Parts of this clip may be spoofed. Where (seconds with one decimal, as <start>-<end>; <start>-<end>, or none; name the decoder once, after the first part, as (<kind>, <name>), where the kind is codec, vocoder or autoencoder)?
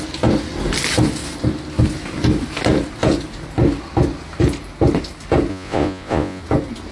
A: 5.5-6.4 (vocoder, Vocos)